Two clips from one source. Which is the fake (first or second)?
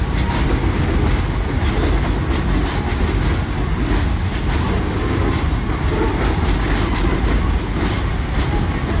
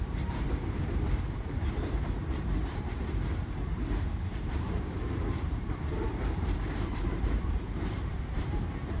second